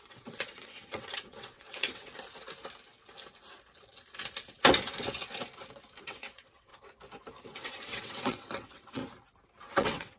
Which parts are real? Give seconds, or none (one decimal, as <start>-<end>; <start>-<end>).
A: 2.1-6.0; 6.7-7.4; 9.0-9.7